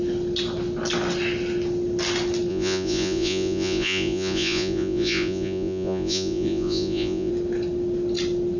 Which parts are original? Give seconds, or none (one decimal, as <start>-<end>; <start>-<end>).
0.0-2.5; 7.3-8.6